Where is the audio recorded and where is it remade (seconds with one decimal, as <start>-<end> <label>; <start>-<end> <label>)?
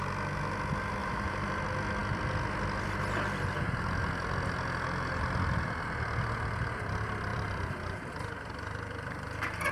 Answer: 0.0-1.0 recorded; 1.0-1.6 remade; 1.6-7.3 recorded; 7.3-8.1 remade; 8.1-9.7 recorded